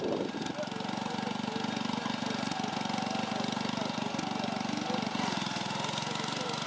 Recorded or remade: recorded